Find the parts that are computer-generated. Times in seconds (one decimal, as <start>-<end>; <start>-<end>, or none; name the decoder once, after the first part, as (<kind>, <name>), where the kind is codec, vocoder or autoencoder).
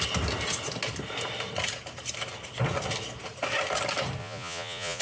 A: 4.2-5.0 (vocoder, Vocos)